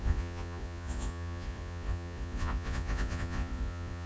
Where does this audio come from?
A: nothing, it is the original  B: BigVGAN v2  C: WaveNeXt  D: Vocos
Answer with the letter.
D